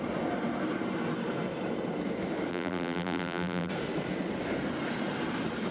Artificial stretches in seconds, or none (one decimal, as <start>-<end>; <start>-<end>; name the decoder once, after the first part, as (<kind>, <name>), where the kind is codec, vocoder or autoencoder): 2.5-3.7 (vocoder, BigVGAN v2)